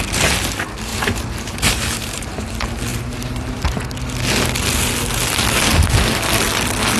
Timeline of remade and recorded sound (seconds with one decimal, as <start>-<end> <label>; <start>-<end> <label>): 0.0-0.9 recorded; 0.9-2.5 remade; 2.5-2.9 recorded; 2.9-3.6 remade; 3.6-7.0 recorded